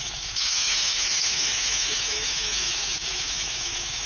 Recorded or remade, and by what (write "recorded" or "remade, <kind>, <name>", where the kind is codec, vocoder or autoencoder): remade, autoencoder, DAC-VAE